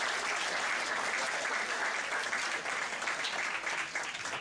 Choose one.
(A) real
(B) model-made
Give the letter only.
A